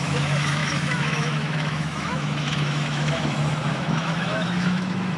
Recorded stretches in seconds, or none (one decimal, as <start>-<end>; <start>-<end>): none